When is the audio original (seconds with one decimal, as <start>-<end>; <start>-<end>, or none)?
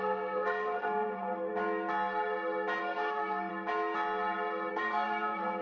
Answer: 1.5-2.8; 3.5-4.7